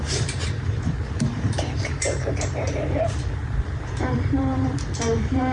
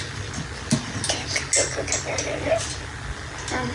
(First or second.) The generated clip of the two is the first